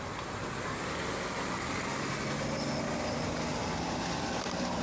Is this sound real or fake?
real